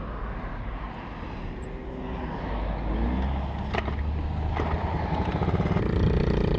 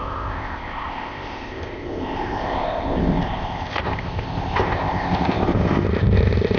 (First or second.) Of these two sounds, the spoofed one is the second